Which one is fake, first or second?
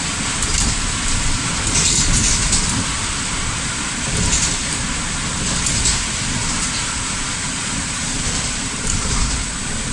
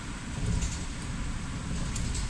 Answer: first